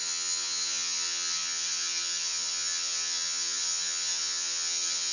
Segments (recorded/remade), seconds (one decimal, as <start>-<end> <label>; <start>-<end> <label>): 0.0-5.1 remade